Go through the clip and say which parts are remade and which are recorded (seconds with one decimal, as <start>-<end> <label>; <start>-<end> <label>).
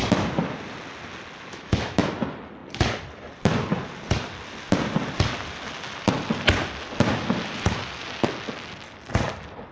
0.0-1.5 recorded; 1.5-2.1 remade; 2.1-9.7 recorded